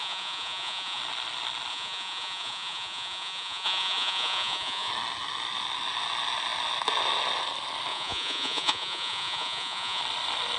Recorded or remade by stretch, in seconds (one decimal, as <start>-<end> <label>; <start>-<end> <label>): 0.0-1.0 remade; 1.0-1.7 recorded; 1.7-4.9 remade; 4.9-7.9 recorded; 7.9-10.0 remade; 10.0-10.6 recorded